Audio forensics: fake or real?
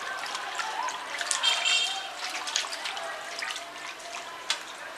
fake